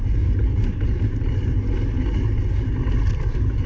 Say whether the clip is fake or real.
real